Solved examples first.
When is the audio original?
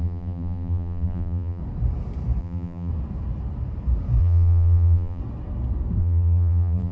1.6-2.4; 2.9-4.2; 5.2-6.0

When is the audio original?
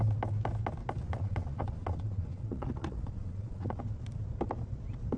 0.0-1.0; 3.8-5.2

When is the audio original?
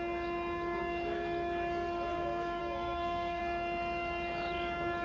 0.0-2.6; 3.4-5.0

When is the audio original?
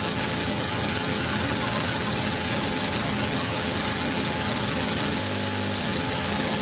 5.2-5.8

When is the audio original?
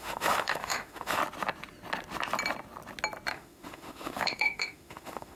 1.2-3.3